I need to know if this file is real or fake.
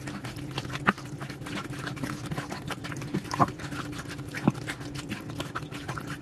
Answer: real